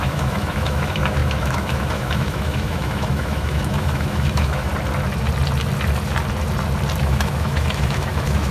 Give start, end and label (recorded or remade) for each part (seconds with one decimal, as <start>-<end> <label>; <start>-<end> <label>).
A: 0.0-4.7 remade; 4.7-7.0 recorded; 7.0-8.5 remade